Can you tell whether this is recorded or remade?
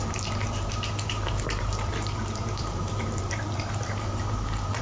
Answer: remade